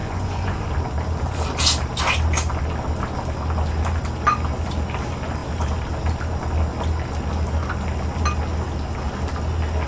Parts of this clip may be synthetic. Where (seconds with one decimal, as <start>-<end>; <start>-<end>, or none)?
0.0-0.7